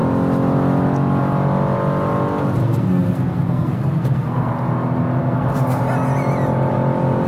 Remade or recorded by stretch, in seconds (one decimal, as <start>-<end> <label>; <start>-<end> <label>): 0.0-2.6 recorded; 2.6-4.5 remade; 4.5-5.2 recorded; 5.2-5.8 remade; 5.8-7.3 recorded